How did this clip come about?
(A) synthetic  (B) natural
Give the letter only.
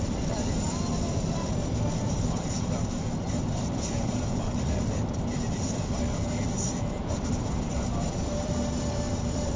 A